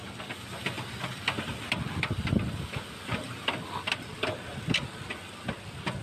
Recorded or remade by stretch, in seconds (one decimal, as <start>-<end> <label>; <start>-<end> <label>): 0.0-6.0 recorded